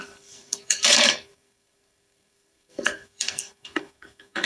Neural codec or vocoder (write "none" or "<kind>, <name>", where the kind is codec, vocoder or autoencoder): codec, SNAC